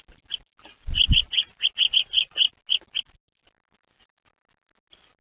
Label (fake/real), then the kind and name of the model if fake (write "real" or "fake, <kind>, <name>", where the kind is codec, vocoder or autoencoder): real